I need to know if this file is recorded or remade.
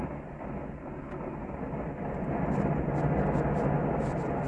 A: recorded